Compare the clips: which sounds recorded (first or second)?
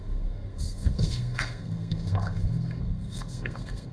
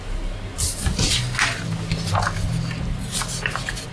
second